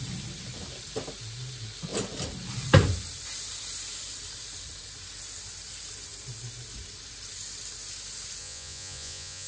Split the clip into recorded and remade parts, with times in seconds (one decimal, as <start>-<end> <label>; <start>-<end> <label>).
0.0-8.4 recorded; 8.4-9.5 remade